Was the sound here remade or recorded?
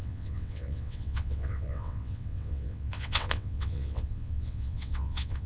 remade